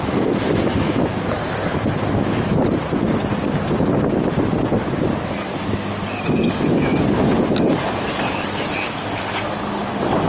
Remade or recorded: recorded